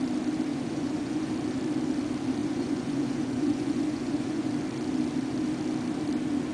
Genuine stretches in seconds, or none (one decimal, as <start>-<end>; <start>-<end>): 0.0-0.5; 1.3-2.4; 4.5-6.5